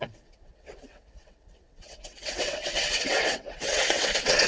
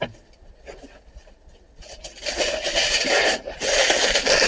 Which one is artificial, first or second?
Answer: first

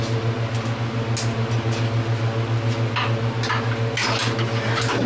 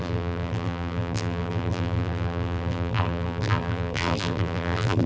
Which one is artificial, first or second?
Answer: second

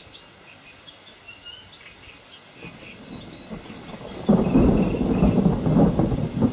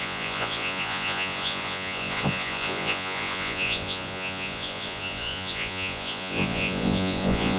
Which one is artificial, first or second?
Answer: second